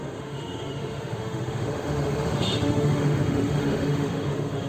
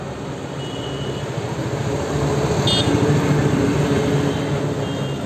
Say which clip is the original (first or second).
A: second